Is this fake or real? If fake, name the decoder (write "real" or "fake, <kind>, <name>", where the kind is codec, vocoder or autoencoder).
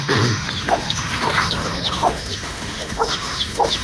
fake, autoencoder, DAC-VAE